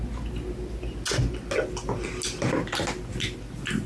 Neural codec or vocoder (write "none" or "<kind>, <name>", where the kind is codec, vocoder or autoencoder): none